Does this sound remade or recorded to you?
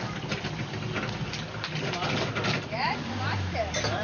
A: recorded